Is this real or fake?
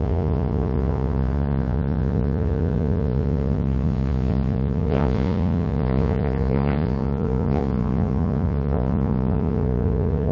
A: fake